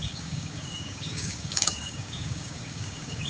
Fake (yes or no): yes